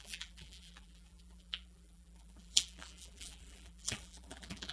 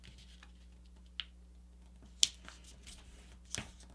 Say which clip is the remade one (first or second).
first